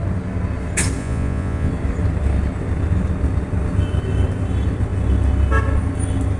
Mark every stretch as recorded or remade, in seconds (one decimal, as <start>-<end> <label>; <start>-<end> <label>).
0.0-1.0 recorded; 1.0-1.7 remade; 1.7-6.4 recorded